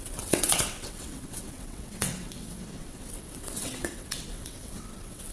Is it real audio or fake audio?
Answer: fake